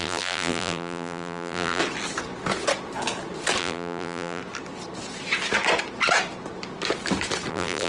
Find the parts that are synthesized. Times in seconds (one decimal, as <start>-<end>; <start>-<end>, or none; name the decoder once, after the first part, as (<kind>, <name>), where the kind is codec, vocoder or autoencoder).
0.0-1.8 (vocoder, BigVGAN v2); 3.6-4.4; 7.5-7.9